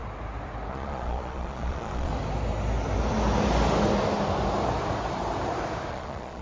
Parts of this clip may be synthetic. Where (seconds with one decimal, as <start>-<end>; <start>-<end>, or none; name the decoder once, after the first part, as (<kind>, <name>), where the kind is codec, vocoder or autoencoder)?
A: 0.7-2.1 (vocoder, Vocos); 5.9-6.4